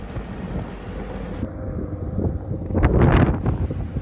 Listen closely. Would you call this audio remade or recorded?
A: remade